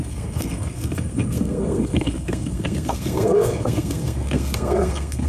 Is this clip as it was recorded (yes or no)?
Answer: no